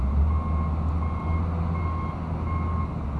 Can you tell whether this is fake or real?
real